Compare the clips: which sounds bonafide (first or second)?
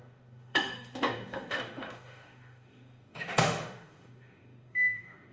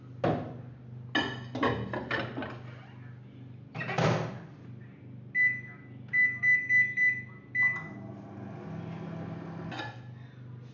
second